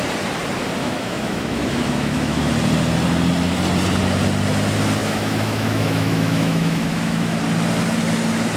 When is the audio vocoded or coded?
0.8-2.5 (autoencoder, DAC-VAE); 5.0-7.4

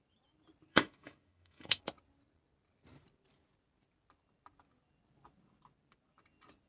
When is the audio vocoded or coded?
0.7-1.8 (autoencoder, DAC-VAE)